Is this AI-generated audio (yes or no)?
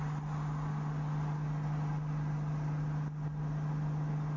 no